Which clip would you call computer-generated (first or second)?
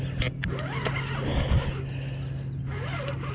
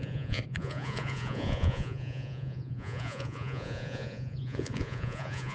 second